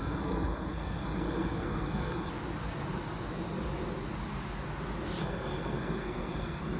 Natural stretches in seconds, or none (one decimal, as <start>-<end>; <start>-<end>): 2.3-5.2